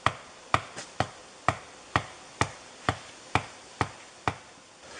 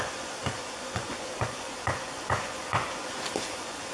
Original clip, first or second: first